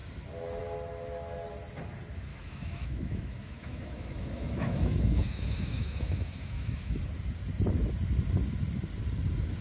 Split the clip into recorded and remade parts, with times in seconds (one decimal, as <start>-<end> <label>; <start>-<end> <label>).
0.0-2.3 recorded; 2.3-7.0 remade; 7.0-9.6 recorded